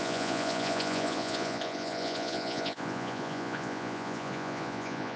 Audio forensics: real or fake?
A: fake